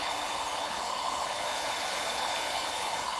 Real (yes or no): no